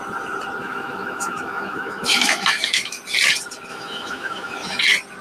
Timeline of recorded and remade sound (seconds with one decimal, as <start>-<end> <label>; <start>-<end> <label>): 0.0-0.6 recorded; 0.6-3.0 remade; 3.0-3.7 recorded; 3.7-4.8 remade; 4.8-5.2 recorded